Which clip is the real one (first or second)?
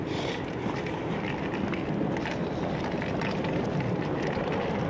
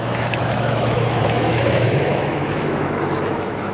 first